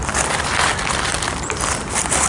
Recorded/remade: recorded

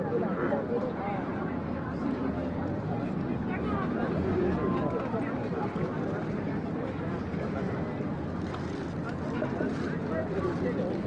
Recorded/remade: remade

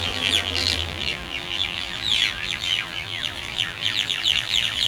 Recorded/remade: remade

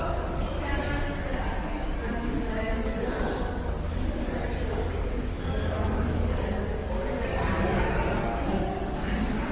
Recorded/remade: remade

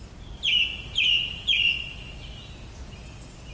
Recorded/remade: recorded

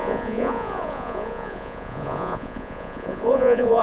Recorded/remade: remade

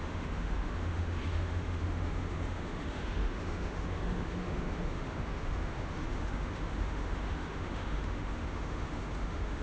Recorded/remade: remade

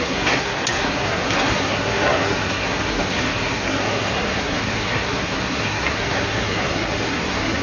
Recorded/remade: remade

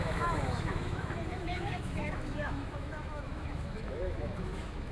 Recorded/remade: remade